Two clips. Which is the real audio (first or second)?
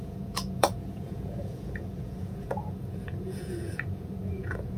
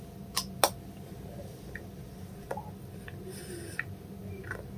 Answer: second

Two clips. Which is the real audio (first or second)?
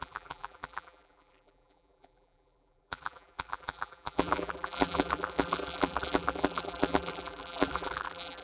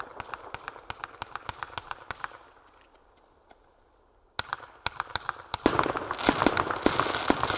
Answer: second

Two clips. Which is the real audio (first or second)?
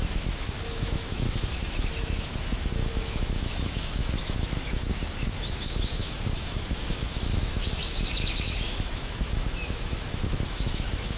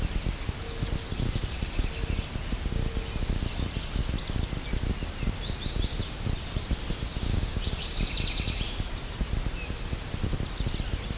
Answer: second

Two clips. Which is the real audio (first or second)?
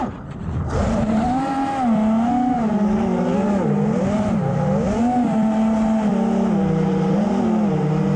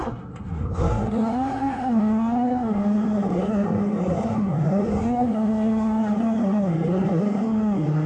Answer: first